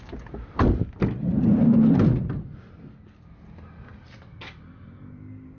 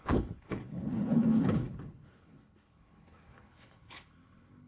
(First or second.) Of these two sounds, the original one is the first